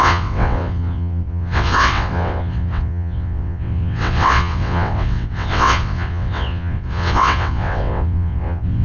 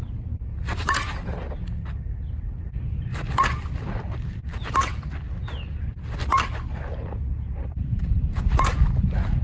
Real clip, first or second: second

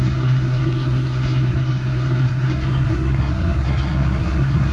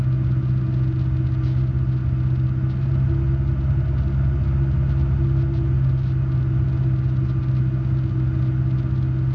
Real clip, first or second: second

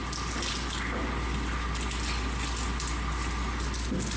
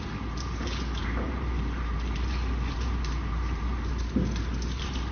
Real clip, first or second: first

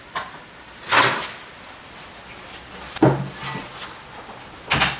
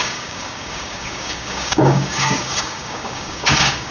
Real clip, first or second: first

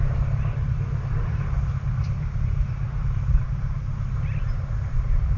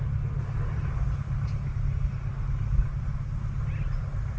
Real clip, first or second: second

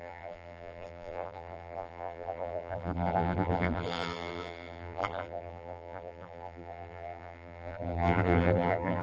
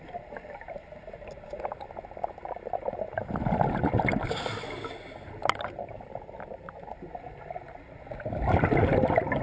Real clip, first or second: second